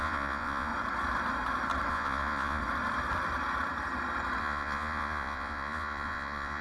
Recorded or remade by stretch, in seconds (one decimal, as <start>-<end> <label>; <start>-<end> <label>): 0.0-0.7 remade; 0.7-1.9 recorded; 1.9-2.6 remade; 2.6-4.4 recorded; 4.4-6.6 remade